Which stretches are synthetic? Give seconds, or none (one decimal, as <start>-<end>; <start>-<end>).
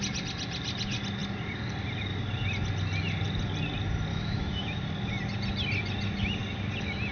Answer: 4.1-4.8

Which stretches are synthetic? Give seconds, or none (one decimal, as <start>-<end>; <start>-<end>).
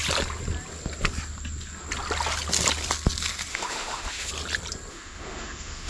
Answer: 3.5-4.3; 4.9-5.9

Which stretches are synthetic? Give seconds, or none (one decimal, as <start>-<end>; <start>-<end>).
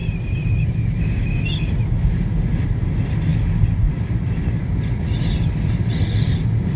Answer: none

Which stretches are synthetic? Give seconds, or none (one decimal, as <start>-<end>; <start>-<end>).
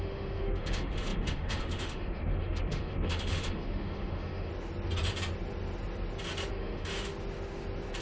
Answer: 0.0-4.5; 6.5-7.1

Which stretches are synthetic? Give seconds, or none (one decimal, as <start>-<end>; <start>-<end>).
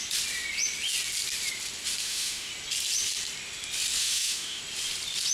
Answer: 2.0-2.5; 4.0-4.6